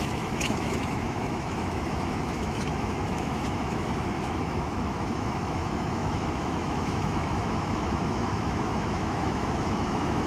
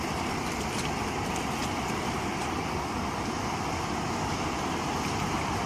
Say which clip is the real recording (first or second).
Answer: second